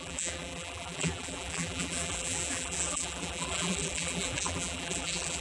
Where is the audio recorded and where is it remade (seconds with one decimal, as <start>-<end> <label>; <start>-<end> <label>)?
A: 0.0-5.4 remade